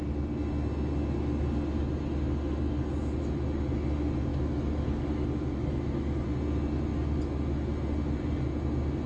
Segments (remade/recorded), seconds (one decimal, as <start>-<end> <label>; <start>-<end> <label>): 0.0-4.3 recorded; 4.3-6.2 remade; 6.2-9.1 recorded